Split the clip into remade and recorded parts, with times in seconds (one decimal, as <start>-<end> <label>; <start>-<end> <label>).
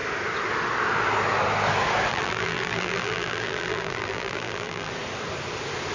0.0-2.1 recorded; 2.1-4.9 remade; 4.9-5.9 recorded